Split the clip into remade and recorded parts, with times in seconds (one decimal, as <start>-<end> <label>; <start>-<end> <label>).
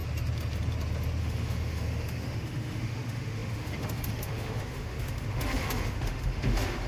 0.0-1.2 recorded; 1.2-6.9 remade